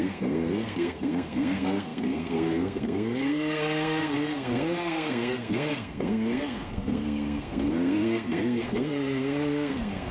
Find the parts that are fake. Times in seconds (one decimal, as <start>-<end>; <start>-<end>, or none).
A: 0.0-10.1